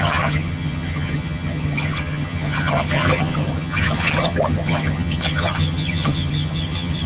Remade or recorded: remade